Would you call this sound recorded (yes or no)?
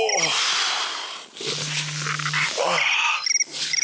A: yes